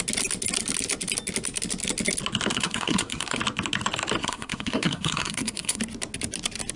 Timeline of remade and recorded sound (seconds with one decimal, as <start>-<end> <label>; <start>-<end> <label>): 0.0-2.5 recorded; 2.5-3.4 remade; 3.4-4.2 recorded; 4.2-5.8 remade; 5.8-6.8 recorded